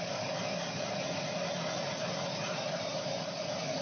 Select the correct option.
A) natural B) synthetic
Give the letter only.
A